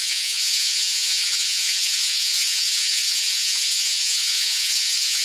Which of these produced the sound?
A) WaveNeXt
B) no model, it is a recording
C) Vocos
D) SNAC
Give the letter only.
C